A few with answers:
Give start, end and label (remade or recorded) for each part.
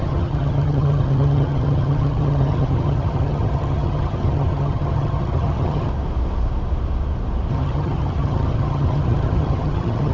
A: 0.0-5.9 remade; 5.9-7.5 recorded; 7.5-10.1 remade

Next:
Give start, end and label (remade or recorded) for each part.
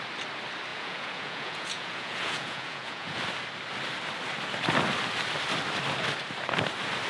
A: 0.0-0.7 recorded; 0.7-3.2 remade; 3.2-7.1 recorded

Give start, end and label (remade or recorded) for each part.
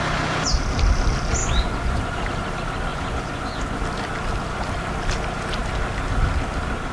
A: 0.0-1.4 recorded; 1.4-2.2 remade; 2.2-2.9 recorded; 2.9-3.8 remade; 3.8-6.9 recorded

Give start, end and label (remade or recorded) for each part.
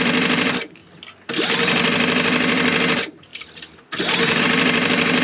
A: 0.0-0.8 remade; 0.8-1.4 recorded; 1.4-5.2 remade